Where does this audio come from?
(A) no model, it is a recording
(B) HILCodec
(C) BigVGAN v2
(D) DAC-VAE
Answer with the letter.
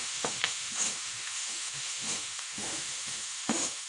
D